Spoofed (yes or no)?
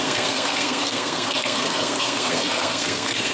yes